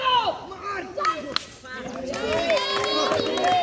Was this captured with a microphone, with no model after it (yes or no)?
yes